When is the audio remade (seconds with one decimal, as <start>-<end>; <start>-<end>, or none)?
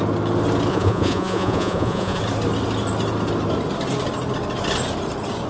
0.7-2.2